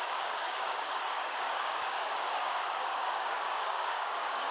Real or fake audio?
fake